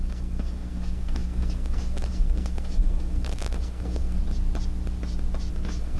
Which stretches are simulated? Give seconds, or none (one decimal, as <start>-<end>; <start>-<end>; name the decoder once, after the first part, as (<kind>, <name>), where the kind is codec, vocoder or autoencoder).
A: 0.0-4.2 (codec, SNAC); 5.5-6.0